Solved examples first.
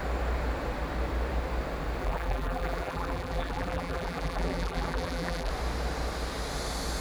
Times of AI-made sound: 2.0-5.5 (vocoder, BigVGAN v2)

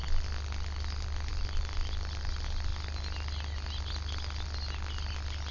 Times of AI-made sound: none